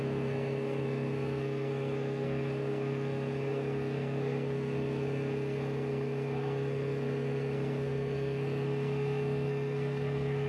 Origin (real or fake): fake